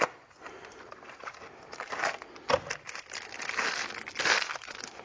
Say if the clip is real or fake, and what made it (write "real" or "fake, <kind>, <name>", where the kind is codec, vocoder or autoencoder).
real